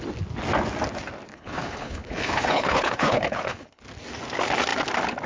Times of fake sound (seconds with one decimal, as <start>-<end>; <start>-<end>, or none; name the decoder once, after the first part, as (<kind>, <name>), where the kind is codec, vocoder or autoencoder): 1.3-3.8 (codec, HILCodec)